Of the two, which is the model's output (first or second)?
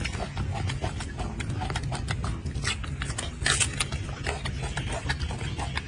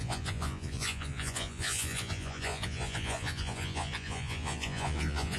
second